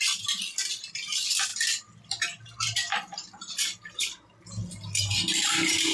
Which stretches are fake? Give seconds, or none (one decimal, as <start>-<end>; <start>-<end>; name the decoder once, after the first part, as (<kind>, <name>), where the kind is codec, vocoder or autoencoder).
none